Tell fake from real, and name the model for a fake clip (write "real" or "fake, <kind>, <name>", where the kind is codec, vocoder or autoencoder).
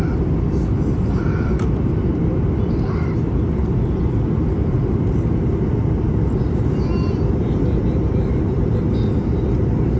fake, vocoder, BigVGAN v2